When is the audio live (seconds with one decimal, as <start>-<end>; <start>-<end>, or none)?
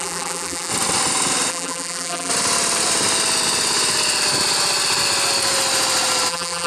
0.7-1.5; 2.3-6.3